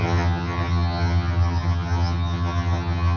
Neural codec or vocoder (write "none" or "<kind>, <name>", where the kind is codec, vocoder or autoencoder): vocoder, HiFi-GAN